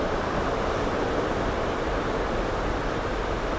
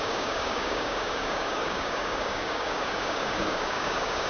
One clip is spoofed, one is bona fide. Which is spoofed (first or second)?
second